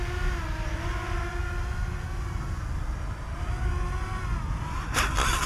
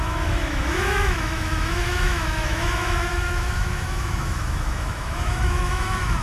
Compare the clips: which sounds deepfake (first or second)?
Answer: second